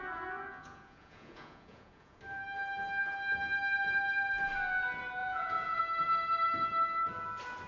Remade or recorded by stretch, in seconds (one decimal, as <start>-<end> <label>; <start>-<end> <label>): 0.0-0.4 recorded; 0.4-2.2 remade; 2.2-5.2 recorded; 5.2-5.8 remade; 5.8-7.7 recorded